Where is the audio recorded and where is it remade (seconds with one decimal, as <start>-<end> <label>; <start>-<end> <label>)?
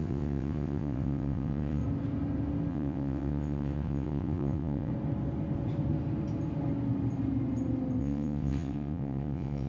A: 0.0-1.8 remade; 1.8-2.7 recorded; 2.7-4.9 remade; 4.9-8.0 recorded; 8.0-9.7 remade